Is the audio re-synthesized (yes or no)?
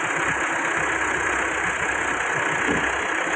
no